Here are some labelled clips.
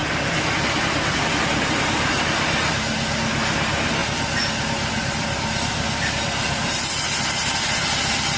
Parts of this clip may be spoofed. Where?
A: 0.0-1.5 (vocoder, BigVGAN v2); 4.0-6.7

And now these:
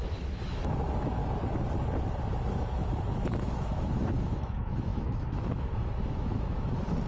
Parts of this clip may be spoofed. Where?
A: 0.0-1.2 (autoencoder, DAC-VAE); 2.3-7.1

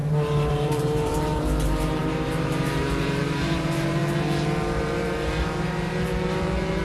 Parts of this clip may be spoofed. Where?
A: 0.5-6.8 (vocoder, BigVGAN v2)

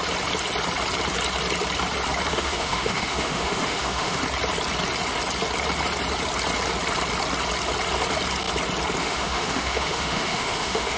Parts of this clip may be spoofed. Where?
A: 2.3-4.2 (autoencoder, DAC-VAE); 9.0-11.0

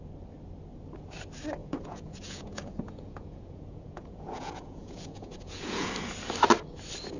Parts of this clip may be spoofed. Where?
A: 1.6-5.9 (vocoder, Vocos)